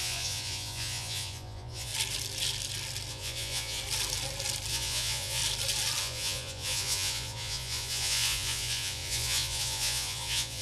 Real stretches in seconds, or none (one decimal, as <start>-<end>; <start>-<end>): 1.9-3.1; 3.8-4.7; 5.4-6.0